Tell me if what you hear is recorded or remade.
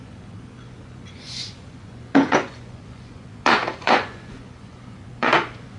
remade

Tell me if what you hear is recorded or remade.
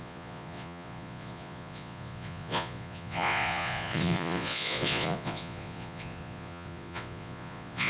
remade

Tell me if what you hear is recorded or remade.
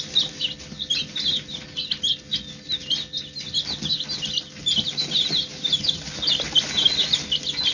recorded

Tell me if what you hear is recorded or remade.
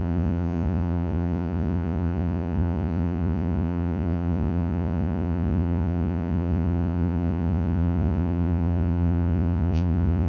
remade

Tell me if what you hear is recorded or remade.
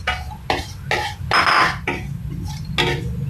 recorded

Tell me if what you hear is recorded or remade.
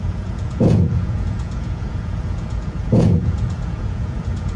remade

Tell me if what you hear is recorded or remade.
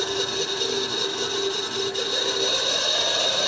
recorded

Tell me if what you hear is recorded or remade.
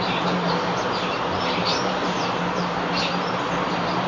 recorded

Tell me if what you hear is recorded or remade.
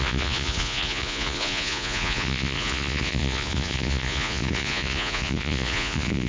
remade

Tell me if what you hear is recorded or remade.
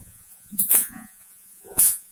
remade